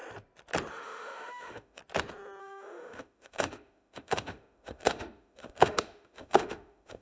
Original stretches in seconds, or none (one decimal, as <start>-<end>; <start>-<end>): 0.0-0.7; 1.8-2.4